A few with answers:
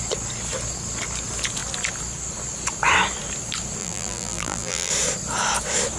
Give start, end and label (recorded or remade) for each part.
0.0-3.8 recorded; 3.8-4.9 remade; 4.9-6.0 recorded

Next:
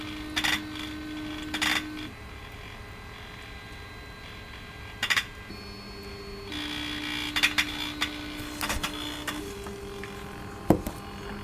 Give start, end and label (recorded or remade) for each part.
0.0-11.4 recorded

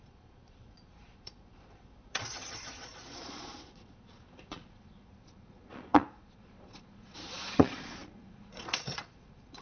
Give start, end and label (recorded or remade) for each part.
0.0-9.6 remade

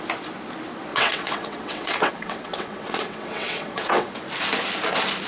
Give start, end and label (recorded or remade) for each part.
0.0-0.9 recorded; 0.9-4.1 remade; 4.1-5.3 recorded

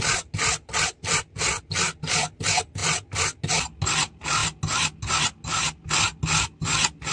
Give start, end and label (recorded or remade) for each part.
0.0-7.1 recorded

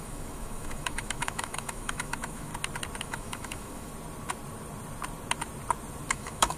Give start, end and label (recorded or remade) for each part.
0.0-2.5 remade; 2.5-3.0 recorded; 3.0-3.9 remade; 3.9-6.1 recorded; 6.1-6.6 remade